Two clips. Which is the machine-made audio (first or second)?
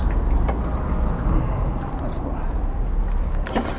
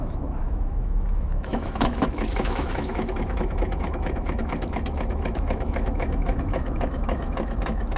second